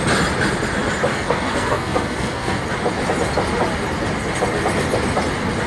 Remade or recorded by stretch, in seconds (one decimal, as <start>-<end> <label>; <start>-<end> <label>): 0.0-1.1 recorded; 1.1-2.6 remade; 2.6-5.7 recorded